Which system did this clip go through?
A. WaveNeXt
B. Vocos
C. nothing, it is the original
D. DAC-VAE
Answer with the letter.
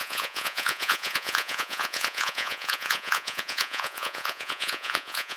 B